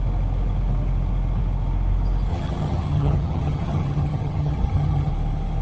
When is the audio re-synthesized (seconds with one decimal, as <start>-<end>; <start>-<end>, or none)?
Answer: 2.3-5.1